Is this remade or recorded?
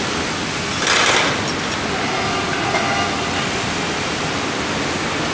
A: recorded